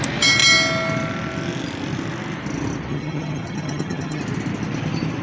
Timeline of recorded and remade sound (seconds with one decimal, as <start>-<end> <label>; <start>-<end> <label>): 0.0-2.9 recorded; 2.9-4.2 remade; 4.2-5.2 recorded